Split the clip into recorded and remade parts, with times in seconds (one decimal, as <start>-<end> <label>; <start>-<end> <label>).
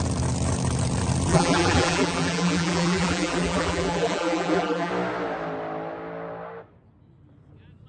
0.0-1.3 recorded; 1.3-4.9 remade; 4.9-7.9 recorded